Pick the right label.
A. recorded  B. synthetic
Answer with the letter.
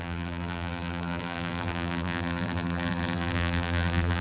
B